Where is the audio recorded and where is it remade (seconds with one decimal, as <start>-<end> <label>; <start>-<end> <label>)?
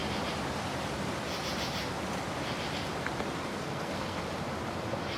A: 0.0-3.5 recorded; 3.5-4.2 remade; 4.2-5.2 recorded